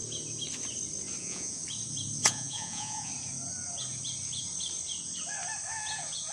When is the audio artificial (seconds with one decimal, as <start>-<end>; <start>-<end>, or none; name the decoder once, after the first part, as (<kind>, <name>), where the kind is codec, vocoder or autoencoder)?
1.2-1.6 (vocoder, Vocos); 2.2-3.1